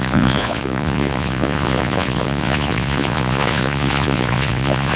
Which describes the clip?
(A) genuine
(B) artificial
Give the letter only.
B